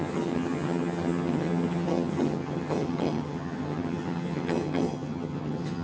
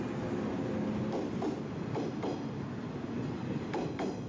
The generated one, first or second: first